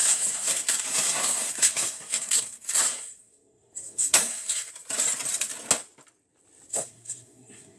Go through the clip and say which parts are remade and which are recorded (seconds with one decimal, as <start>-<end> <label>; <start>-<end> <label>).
0.0-4.7 remade; 4.7-6.7 recorded; 6.7-7.8 remade